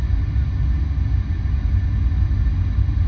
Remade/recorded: recorded